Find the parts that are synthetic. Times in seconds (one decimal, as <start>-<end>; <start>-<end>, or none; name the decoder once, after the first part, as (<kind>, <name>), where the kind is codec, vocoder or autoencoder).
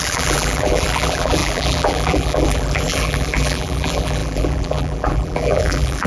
0.0-6.1 (vocoder, BigVGAN v2)